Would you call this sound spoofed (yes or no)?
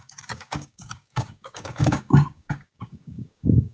yes